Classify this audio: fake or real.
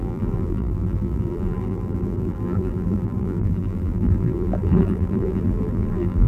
fake